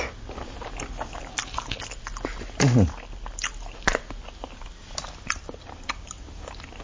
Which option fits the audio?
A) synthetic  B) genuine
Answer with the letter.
B